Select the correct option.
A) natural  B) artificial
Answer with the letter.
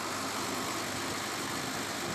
A